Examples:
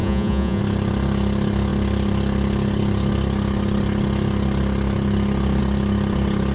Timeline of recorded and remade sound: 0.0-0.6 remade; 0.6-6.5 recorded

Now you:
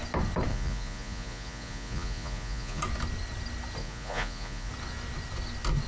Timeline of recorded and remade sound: 0.0-0.5 recorded; 0.5-2.8 remade; 2.8-3.8 recorded; 3.8-4.7 remade; 4.7-5.9 recorded

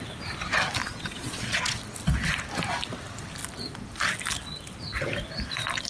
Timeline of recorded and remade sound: 0.0-0.8 recorded; 0.8-1.8 remade; 1.8-5.9 recorded

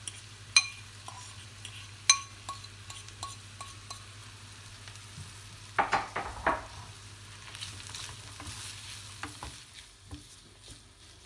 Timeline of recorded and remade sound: 0.0-11.3 recorded

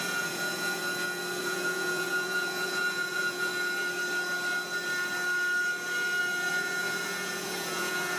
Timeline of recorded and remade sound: 0.0-0.8 remade; 0.8-1.4 recorded; 1.4-3.5 remade; 3.5-6.2 recorded; 6.2-8.2 remade

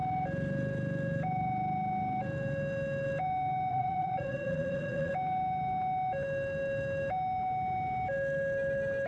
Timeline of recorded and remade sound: 0.0-3.7 recorded; 3.7-5.1 remade; 5.1-9.1 recorded

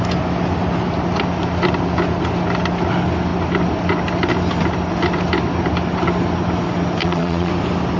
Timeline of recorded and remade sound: 0.0-7.0 recorded; 7.0-7.5 remade; 7.5-8.0 recorded

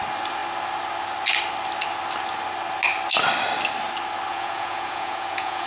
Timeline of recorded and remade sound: 0.0-4.3 recorded; 4.3-5.7 remade